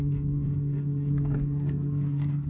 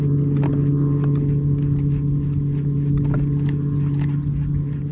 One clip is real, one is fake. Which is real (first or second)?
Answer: second